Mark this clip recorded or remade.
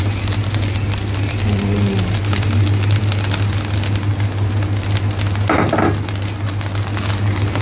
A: recorded